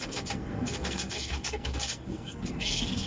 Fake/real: fake